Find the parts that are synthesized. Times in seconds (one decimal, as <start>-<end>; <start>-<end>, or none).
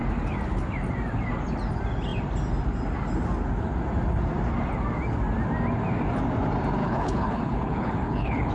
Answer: 6.8-8.5